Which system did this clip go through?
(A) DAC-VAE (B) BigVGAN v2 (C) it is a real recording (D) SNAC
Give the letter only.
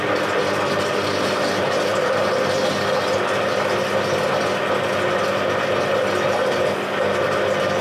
C